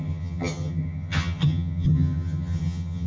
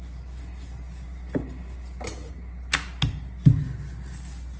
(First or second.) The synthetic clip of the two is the first